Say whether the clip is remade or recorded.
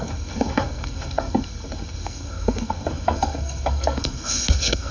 remade